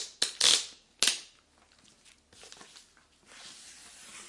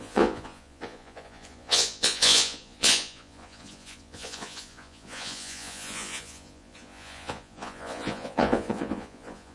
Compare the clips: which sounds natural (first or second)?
first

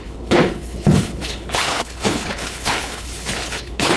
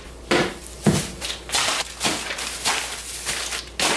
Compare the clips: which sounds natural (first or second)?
second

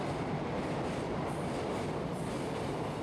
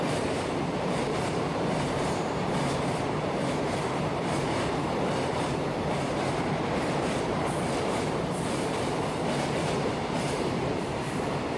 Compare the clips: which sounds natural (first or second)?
first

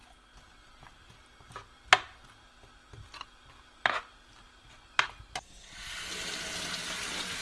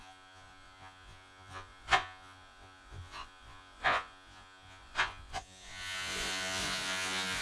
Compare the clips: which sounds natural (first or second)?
first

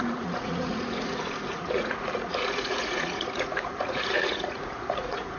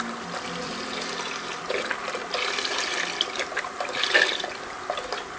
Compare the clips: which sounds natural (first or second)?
second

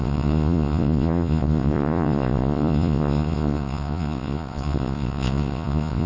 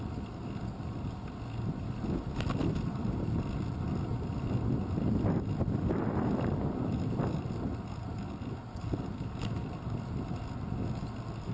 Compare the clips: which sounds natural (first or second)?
second